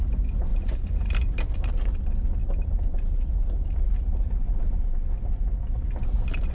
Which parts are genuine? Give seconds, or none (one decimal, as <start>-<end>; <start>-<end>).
0.0-0.5; 1.7-2.4; 4.6-6.5